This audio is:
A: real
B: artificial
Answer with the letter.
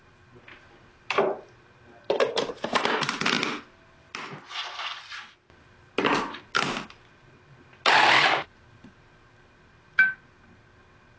A